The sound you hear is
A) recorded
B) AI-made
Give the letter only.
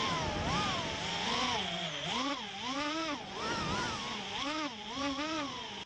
A